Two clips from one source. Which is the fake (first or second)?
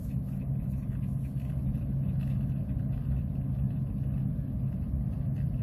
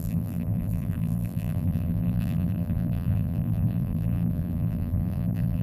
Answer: second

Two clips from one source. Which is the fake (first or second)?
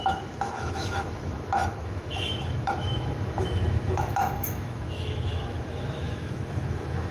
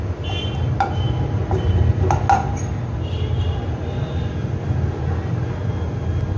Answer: first